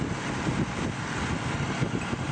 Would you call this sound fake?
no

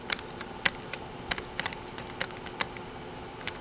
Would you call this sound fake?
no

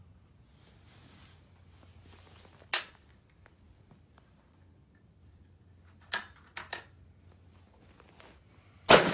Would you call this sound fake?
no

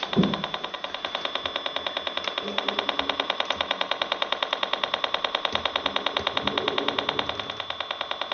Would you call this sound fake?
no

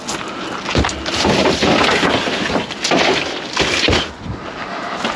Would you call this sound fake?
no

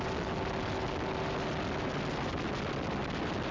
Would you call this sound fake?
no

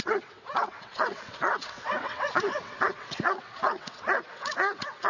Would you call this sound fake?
yes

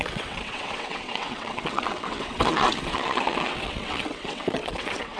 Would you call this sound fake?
yes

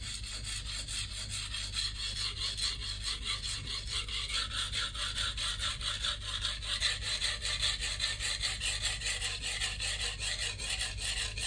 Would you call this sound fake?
no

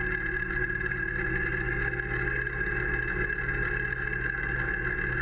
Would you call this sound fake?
no